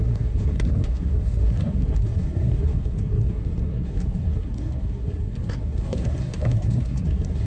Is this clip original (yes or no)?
no